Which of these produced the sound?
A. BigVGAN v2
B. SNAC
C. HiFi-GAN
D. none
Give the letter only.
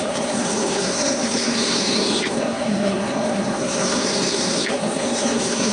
B